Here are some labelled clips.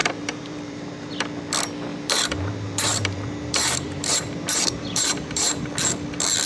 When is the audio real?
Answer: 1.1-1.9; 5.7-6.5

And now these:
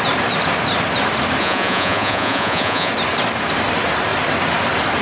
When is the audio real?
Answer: 0.0-1.4; 2.9-5.0

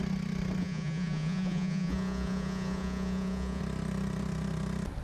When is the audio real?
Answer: 0.0-0.6; 3.6-5.0

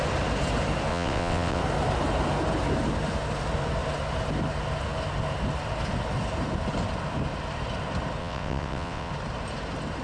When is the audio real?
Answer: 0.0-0.9; 1.6-8.2; 9.1-10.0